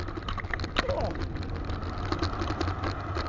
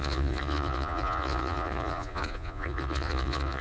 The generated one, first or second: second